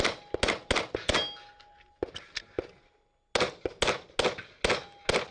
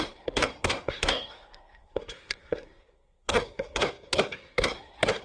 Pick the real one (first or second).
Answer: first